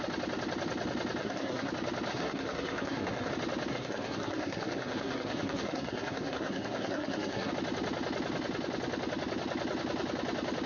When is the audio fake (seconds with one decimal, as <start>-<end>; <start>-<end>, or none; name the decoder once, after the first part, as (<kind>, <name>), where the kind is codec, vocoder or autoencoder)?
1.2-1.7 (codec, SNAC); 2.1-3.3; 3.7-7.5